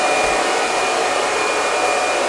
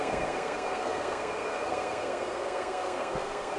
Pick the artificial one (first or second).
second